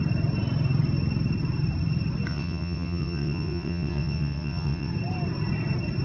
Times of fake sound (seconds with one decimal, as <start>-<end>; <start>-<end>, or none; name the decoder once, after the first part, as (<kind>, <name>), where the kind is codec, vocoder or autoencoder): 2.3-4.9 (vocoder, WaveNeXt)